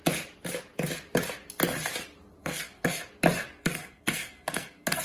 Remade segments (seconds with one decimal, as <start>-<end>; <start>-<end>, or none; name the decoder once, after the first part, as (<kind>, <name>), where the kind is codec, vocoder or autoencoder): 2.4-3.1 (codec, SNAC); 3.6-5.0